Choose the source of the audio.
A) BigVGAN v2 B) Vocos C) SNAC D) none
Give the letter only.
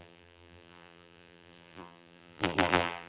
A